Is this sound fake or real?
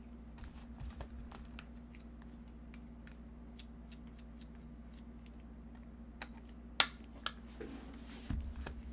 real